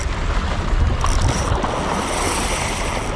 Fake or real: real